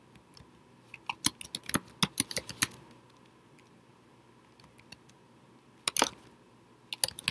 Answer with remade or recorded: recorded